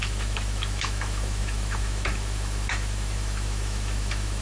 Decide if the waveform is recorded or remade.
remade